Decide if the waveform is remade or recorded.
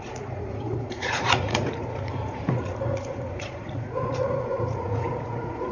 remade